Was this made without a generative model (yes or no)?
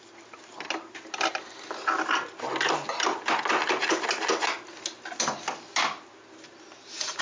yes